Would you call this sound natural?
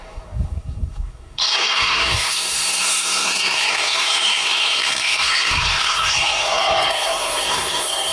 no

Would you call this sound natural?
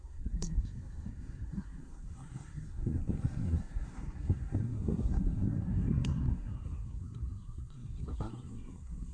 no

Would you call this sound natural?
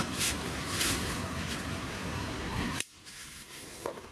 no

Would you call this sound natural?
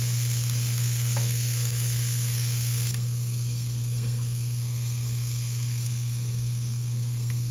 no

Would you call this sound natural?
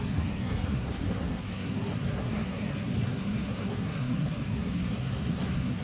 no